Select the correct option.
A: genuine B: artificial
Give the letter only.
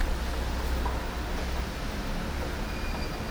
A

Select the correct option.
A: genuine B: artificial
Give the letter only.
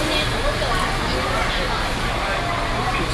A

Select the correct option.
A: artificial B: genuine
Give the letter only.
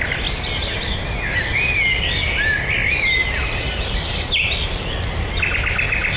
B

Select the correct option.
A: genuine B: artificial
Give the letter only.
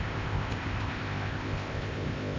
B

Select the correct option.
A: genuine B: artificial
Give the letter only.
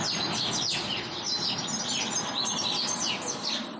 A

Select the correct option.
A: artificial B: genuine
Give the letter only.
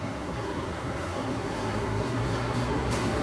A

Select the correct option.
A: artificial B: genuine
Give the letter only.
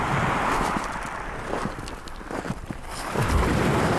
B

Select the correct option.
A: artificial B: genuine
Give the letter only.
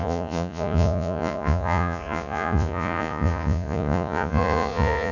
A